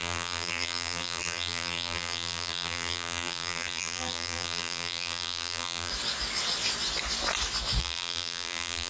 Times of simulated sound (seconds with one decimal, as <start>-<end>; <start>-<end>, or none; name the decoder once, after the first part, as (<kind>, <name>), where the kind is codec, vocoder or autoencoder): 0.0-5.9 (vocoder, BigVGAN v2); 7.8-8.9

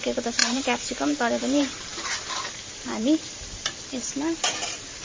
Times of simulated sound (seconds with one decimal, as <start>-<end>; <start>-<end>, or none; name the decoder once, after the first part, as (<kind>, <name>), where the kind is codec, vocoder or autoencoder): 0.0-5.0 (vocoder, BigVGAN v2)

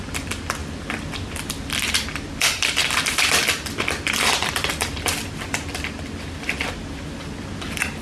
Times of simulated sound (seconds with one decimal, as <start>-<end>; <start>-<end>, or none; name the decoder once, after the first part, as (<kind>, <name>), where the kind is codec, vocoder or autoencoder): 0.0-8.0 (vocoder, BigVGAN v2)

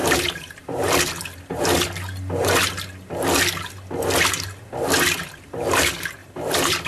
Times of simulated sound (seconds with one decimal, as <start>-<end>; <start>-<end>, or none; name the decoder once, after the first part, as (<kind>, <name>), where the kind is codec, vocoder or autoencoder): 0.0-1.6 (vocoder, BigVGAN v2); 6.2-6.9